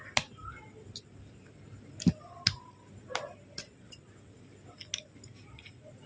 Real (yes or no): yes